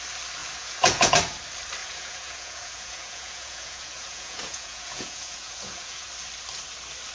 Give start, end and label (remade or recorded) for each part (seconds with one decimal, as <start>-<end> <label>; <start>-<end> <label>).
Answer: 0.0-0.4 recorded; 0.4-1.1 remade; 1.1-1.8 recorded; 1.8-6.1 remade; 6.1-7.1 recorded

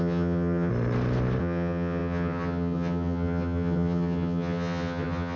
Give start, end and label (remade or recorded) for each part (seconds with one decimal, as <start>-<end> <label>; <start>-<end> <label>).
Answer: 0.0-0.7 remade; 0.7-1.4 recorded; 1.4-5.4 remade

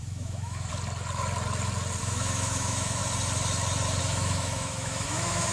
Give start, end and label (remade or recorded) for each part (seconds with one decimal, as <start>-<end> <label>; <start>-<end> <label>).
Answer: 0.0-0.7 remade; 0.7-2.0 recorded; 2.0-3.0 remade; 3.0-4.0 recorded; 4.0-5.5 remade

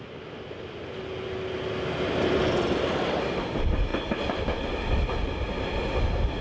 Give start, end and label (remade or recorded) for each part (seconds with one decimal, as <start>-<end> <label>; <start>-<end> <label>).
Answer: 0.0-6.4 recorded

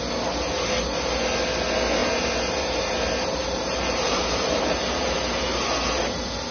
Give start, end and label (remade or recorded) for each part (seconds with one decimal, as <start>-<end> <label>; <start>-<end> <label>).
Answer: 0.0-2.0 recorded; 2.0-2.9 remade; 2.9-3.4 recorded; 3.4-6.0 remade; 6.0-6.5 recorded

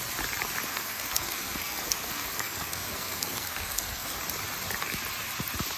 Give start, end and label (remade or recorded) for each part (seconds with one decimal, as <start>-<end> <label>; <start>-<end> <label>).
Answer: 0.0-0.7 recorded; 0.7-4.2 remade; 4.2-5.8 recorded

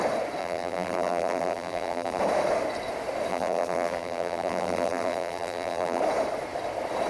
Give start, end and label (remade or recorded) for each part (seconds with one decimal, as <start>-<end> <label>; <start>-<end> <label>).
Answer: 0.0-0.4 recorded; 0.4-2.2 remade; 2.2-3.3 recorded; 3.3-6.0 remade; 6.0-7.1 recorded

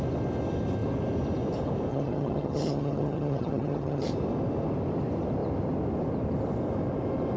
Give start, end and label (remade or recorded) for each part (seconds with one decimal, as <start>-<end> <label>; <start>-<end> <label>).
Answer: 0.0-1.9 recorded; 1.9-4.1 remade; 4.1-7.4 recorded